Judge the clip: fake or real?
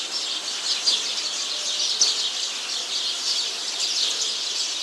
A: real